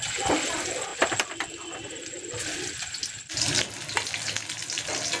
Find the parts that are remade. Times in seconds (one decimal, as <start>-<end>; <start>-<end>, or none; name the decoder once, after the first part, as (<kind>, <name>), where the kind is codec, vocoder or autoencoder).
none